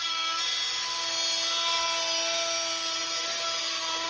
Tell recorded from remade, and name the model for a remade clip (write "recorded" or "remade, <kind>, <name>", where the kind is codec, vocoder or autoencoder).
recorded